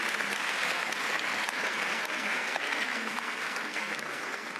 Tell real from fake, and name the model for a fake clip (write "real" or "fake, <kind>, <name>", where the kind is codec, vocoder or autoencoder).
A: fake, codec, SNAC